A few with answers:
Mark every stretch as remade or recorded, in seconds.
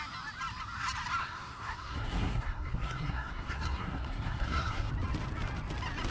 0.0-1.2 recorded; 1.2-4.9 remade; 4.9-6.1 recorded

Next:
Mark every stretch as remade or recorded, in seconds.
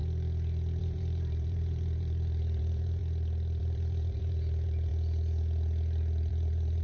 0.0-0.8 recorded; 0.8-3.0 remade; 3.0-3.6 recorded; 3.6-4.9 remade; 4.9-6.3 recorded; 6.3-6.8 remade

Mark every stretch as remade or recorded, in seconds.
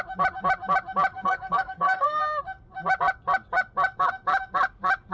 0.0-1.1 recorded; 1.1-2.2 remade; 2.2-5.1 recorded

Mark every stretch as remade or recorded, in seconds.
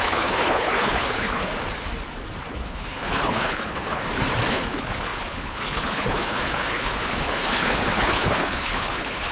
0.0-1.5 remade; 1.5-2.4 recorded; 2.4-4.0 remade; 4.0-4.5 recorded; 4.5-9.3 remade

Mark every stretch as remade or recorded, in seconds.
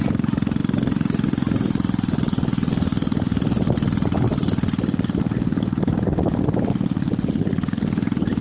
0.0-8.4 recorded